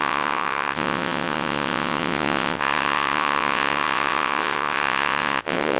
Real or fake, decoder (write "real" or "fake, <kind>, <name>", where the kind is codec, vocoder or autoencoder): fake, vocoder, WaveNeXt